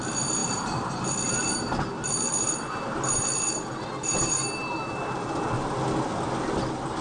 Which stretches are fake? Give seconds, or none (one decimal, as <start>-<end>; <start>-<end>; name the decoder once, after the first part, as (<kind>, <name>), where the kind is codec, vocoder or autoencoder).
none